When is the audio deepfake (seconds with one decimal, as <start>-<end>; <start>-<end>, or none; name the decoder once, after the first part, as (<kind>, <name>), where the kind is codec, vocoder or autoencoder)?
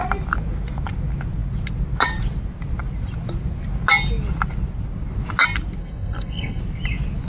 5.8-6.6 (codec, SNAC)